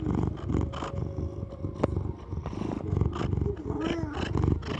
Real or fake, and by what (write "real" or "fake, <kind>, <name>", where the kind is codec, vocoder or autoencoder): real